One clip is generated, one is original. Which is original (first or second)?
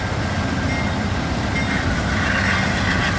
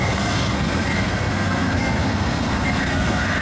first